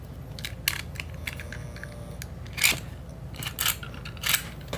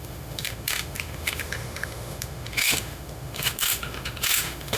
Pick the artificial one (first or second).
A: second